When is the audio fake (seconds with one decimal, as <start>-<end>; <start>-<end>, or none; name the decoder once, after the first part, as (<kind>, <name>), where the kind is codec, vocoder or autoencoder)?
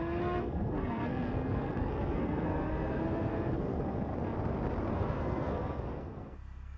0.0-4.1 (codec, SNAC); 4.9-6.8